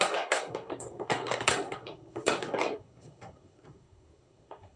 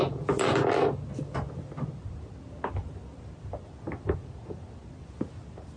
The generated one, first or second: first